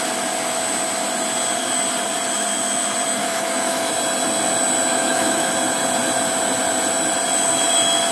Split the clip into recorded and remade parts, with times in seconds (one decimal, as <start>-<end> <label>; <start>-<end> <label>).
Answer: 0.0-3.2 recorded; 3.2-3.9 remade; 3.9-4.9 recorded; 4.9-5.5 remade; 5.5-8.1 recorded